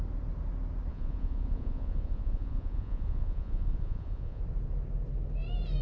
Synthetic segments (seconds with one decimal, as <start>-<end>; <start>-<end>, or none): 0.9-4.4